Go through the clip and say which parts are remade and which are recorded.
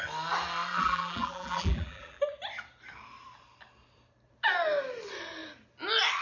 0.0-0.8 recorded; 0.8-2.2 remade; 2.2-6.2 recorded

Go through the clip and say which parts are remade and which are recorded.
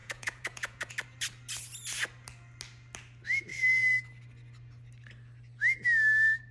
0.0-0.9 remade; 0.9-6.5 recorded